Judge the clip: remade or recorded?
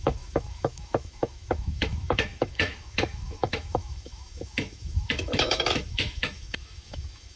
remade